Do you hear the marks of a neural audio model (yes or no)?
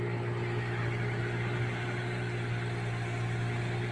no